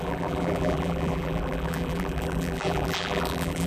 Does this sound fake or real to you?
fake